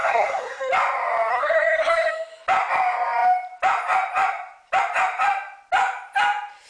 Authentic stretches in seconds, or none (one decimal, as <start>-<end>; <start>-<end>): 0.7-1.3; 2.1-6.7